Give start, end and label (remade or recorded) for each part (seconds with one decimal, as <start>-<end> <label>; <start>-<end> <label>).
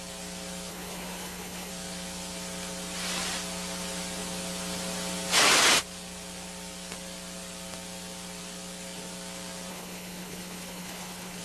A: 0.0-0.7 recorded; 0.7-1.7 remade; 1.7-9.7 recorded; 9.7-11.4 remade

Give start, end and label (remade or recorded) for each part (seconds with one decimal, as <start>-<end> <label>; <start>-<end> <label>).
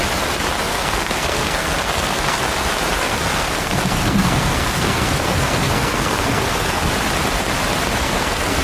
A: 0.0-0.7 recorded; 0.7-2.4 remade; 2.4-3.0 recorded; 3.0-6.9 remade; 6.9-7.9 recorded; 7.9-8.6 remade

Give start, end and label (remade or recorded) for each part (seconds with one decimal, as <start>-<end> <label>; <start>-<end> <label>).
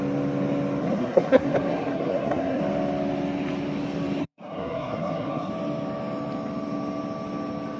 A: 0.0-0.8 recorded; 0.8-2.6 remade; 2.6-4.2 recorded; 4.2-5.5 remade; 5.5-7.8 recorded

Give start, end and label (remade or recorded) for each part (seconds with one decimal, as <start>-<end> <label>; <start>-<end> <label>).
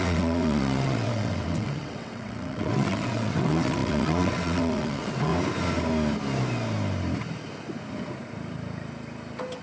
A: 0.0-5.3 remade; 5.3-9.6 recorded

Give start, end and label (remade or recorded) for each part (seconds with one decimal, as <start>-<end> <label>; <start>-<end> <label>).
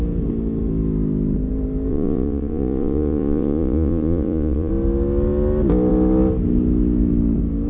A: 0.0-1.9 recorded; 1.9-4.7 remade; 4.7-7.7 recorded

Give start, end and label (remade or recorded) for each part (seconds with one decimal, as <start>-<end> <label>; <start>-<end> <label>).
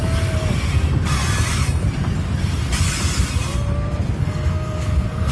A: 0.0-4.2 recorded; 4.2-5.3 remade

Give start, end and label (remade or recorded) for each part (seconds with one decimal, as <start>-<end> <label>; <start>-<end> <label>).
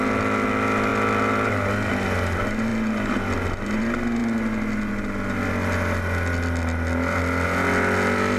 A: 0.0-8.4 recorded